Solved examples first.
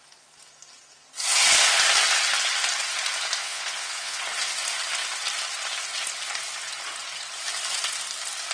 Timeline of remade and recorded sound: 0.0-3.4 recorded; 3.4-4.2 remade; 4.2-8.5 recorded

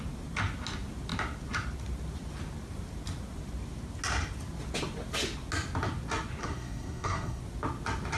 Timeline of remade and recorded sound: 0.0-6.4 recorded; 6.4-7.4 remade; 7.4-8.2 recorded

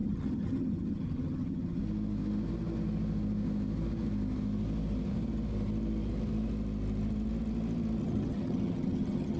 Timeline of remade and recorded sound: 0.0-1.8 remade; 1.8-8.0 recorded; 8.0-9.4 remade